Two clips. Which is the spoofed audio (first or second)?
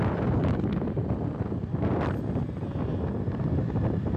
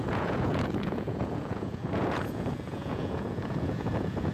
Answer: second